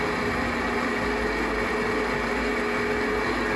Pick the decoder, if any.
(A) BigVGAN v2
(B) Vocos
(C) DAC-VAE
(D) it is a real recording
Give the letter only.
D